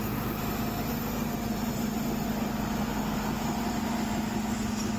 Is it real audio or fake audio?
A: real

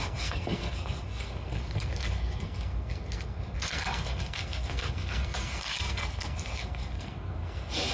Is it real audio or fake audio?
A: fake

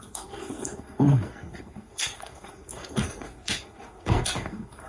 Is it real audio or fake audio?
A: fake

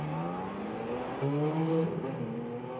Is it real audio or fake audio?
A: real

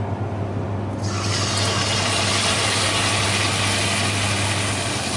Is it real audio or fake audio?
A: real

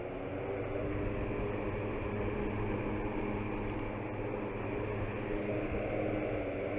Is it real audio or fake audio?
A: real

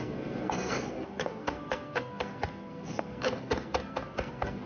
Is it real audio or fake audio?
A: fake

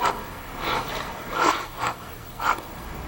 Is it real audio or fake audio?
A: fake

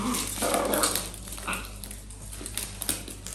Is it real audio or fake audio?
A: real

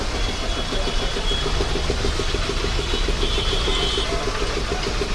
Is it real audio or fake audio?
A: real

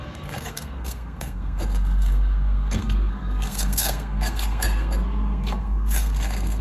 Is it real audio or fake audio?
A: fake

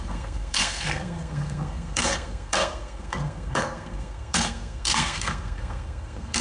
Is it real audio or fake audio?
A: fake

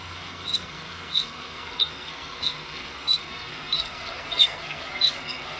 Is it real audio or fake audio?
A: fake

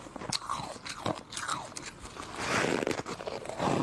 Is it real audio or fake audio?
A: real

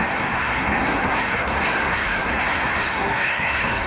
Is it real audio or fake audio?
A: fake